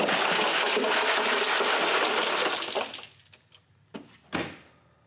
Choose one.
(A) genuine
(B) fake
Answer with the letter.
A